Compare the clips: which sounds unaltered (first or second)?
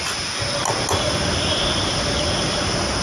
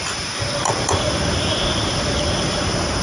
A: first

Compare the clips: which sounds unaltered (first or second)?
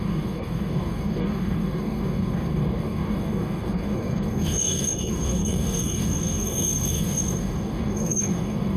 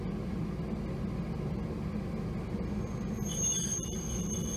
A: second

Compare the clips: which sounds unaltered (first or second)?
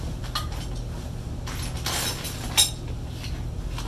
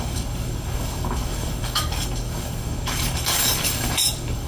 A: first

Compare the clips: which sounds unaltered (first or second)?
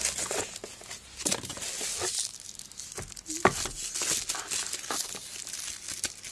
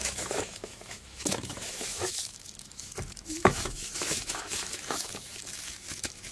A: first